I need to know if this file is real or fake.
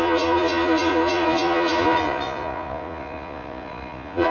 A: fake